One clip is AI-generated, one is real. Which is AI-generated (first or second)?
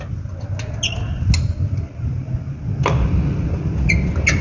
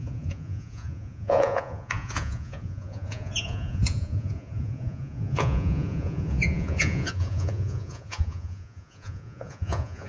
second